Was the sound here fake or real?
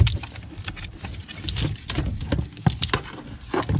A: real